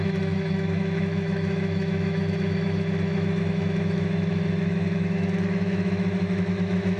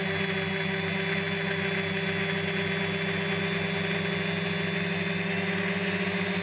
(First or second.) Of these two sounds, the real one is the second